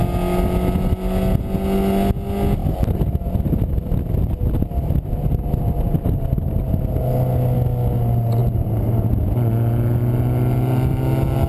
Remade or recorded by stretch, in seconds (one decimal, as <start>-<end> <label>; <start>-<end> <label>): 0.0-8.4 recorded; 8.4-9.2 remade; 9.2-11.5 recorded